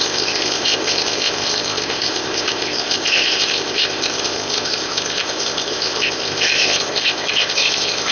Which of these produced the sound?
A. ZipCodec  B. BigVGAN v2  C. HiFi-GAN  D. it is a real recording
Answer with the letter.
A